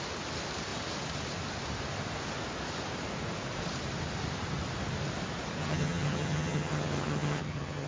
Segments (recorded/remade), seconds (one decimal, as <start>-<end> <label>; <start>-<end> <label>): 0.0-5.6 recorded; 5.6-7.9 remade

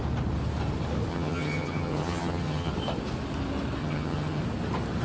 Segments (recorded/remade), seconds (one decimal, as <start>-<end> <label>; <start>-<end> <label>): 0.0-1.1 recorded; 1.1-2.7 remade; 2.7-3.8 recorded; 3.8-4.4 remade; 4.4-5.0 recorded

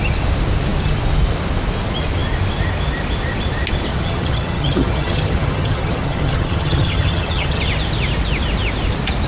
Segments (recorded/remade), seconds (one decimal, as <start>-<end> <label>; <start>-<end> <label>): 0.0-3.9 recorded; 3.9-7.6 remade; 7.6-9.3 recorded

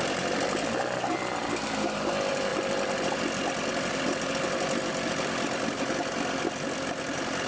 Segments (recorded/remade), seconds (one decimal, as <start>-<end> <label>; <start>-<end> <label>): 0.0-7.5 recorded

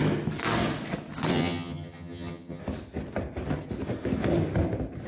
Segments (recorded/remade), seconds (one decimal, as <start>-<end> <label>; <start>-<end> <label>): 0.0-1.3 recorded; 1.3-2.6 remade; 2.6-5.1 recorded

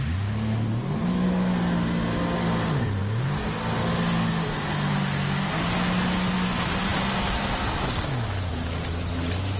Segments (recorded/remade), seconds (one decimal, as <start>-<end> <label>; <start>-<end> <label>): 0.0-9.6 recorded

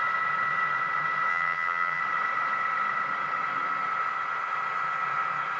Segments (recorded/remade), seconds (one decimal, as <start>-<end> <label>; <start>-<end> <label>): 0.0-1.3 recorded; 1.3-2.0 remade; 2.0-5.6 recorded

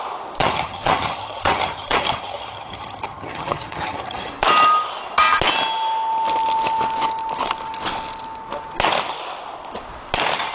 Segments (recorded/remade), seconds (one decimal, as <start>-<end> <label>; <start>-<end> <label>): 0.0-0.4 recorded; 0.4-4.3 remade; 4.3-10.5 recorded